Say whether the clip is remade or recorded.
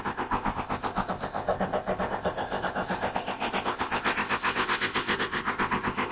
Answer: remade